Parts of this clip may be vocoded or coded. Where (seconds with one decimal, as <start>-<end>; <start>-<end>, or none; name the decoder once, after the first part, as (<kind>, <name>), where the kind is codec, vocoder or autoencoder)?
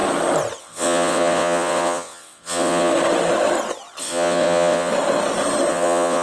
0.6-2.9 (vocoder, WaveNeXt); 4.0-4.9; 5.7-6.2